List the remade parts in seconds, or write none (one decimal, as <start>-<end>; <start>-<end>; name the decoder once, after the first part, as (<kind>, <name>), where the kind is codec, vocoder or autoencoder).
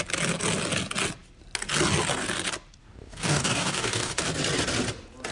2.8-4.2 (codec, DAC)